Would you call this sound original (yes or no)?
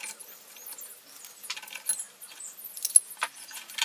yes